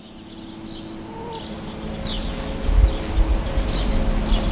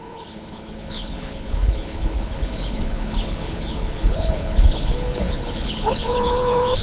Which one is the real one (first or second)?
first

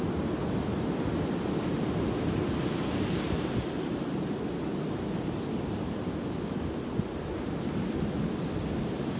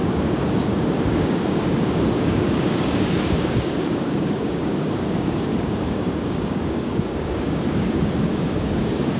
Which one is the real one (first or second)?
first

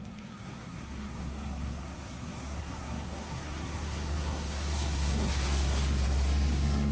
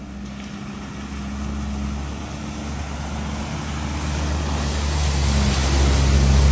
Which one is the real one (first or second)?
second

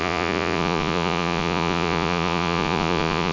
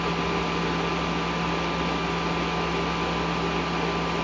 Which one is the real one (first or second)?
second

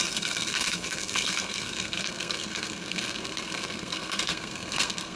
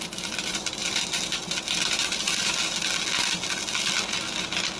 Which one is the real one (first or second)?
second